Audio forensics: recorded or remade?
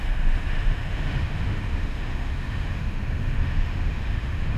remade